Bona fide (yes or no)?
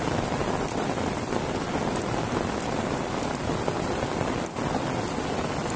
yes